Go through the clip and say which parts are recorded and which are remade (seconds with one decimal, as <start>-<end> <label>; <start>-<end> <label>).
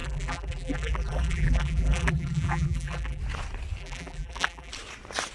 0.0-3.2 remade; 3.2-3.8 recorded; 3.8-4.7 remade; 4.7-5.3 recorded